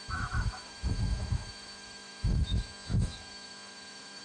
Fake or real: fake